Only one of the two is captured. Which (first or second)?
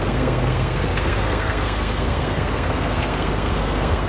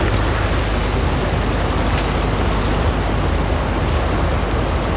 second